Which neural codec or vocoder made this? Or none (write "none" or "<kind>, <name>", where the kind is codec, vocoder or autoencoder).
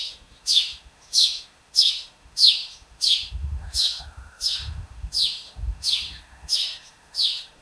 autoencoder, DAC-VAE